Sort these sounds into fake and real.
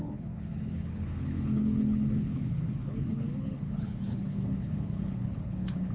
fake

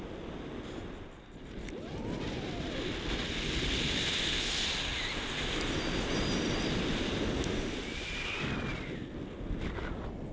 real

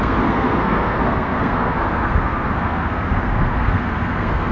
fake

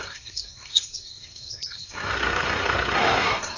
fake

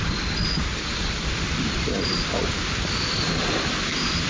real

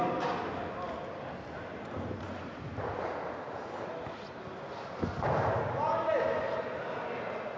real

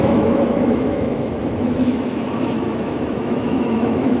fake